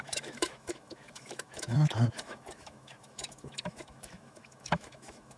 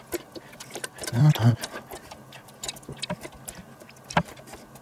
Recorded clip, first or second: second